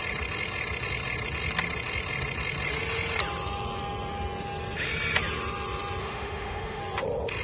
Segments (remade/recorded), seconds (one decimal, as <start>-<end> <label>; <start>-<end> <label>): 0.0-6.0 recorded; 6.0-6.8 remade; 6.8-7.4 recorded